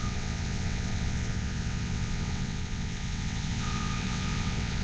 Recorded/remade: remade